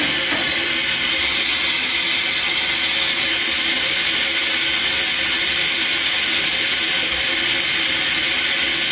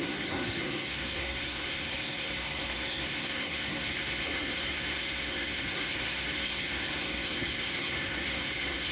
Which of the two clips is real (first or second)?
first